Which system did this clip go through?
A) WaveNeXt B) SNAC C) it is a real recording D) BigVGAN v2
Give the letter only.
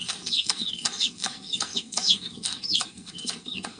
B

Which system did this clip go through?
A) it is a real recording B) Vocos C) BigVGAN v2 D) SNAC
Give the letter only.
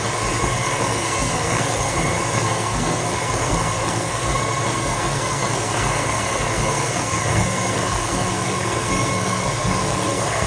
D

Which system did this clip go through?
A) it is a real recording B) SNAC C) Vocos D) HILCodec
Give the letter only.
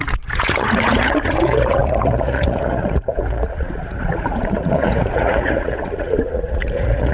C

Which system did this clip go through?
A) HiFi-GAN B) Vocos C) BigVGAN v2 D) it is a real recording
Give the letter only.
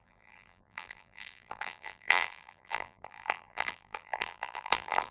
C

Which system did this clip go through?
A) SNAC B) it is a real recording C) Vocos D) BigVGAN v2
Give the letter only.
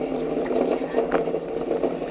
B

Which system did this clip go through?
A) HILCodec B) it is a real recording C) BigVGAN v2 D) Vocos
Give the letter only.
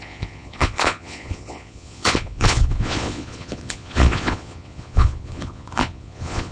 D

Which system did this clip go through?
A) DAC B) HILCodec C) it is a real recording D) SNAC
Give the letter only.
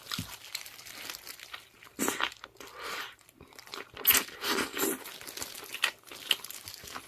C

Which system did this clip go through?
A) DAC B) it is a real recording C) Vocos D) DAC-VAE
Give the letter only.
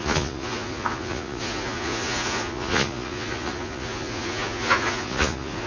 C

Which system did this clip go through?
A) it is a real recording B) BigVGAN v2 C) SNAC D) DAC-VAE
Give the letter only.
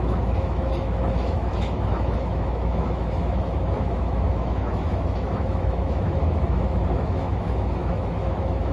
D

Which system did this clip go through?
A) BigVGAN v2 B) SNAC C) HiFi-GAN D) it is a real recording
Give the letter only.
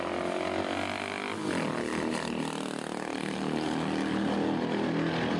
D